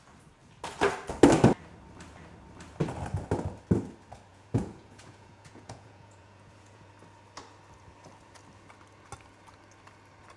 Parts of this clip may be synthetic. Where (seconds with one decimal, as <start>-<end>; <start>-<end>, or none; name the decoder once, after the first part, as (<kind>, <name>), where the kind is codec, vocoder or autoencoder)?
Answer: 4.3-6.9 (vocoder, Vocos)